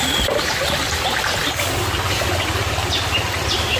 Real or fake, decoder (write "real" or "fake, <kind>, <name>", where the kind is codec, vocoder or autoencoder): real